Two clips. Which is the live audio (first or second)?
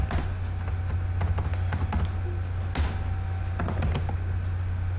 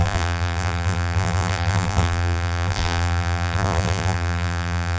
first